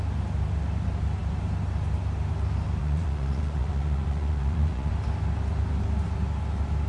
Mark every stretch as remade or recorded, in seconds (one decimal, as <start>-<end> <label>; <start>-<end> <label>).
0.0-2.8 recorded; 2.8-4.9 remade; 4.9-6.9 recorded